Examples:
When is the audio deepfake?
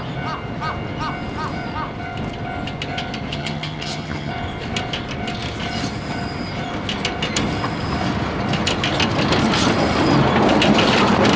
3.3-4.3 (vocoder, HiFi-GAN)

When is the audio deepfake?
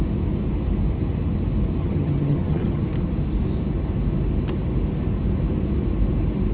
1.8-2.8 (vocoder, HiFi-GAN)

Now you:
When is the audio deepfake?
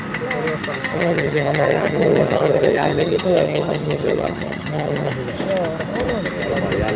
0.9-5.1 (vocoder, HiFi-GAN)